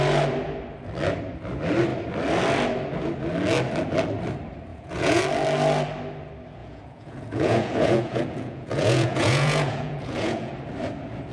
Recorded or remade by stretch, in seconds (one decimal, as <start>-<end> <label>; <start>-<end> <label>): 0.0-4.7 recorded; 4.7-5.2 remade; 5.2-6.6 recorded; 6.6-10.5 remade; 10.5-11.3 recorded